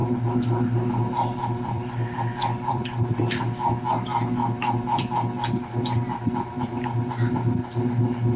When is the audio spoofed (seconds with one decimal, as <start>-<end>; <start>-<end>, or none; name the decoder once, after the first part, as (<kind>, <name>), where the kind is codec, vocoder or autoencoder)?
0.0-3.2 (vocoder, BigVGAN v2); 4.4-5.8